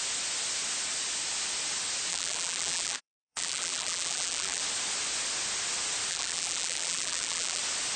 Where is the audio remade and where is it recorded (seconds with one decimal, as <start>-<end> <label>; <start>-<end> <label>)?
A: 0.0-2.1 recorded; 2.1-4.6 remade; 4.6-6.1 recorded; 6.1-7.6 remade; 7.6-8.0 recorded